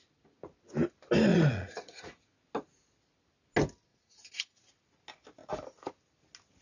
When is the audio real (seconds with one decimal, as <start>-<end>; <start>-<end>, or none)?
0.0-1.3; 2.2-3.9; 4.6-6.6

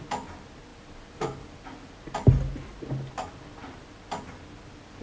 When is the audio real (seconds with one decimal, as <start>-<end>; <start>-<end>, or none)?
0.0-5.0

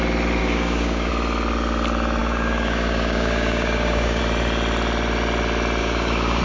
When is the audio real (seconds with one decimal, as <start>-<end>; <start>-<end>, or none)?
0.0-0.4; 1.1-2.2; 4.2-5.8

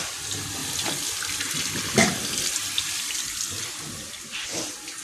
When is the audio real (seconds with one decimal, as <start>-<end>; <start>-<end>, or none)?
0.0-5.0